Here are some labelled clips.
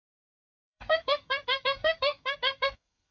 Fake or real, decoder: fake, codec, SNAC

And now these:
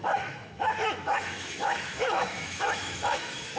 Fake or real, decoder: fake, autoencoder, DAC-VAE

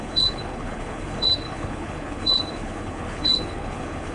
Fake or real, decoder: fake, codec, HILCodec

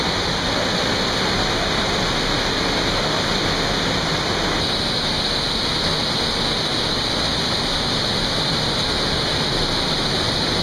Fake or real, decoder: real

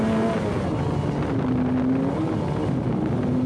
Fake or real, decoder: real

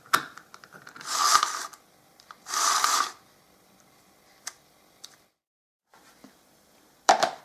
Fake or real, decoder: fake, vocoder, BigVGAN v2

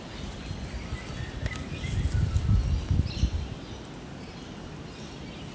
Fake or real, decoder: real